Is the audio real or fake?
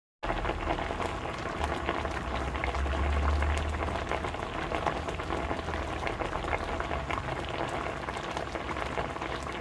real